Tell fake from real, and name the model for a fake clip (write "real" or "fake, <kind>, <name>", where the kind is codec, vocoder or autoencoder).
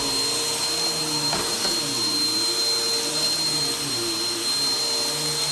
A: real